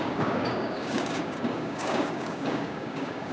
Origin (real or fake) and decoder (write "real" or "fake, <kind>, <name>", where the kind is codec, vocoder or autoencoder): fake, codec, DAC